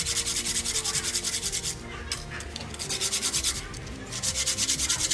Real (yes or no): yes